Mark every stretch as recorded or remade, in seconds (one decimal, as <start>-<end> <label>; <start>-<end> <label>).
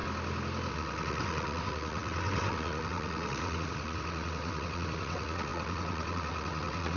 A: 0.0-0.7 recorded; 0.7-7.0 remade